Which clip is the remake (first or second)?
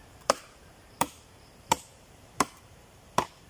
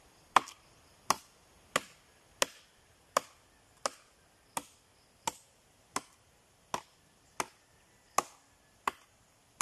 first